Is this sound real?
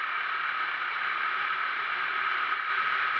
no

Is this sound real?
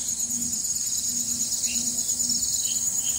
yes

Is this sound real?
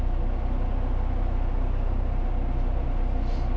yes